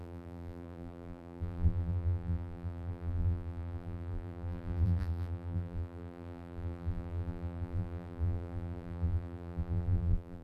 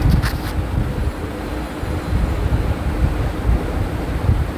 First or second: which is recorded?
second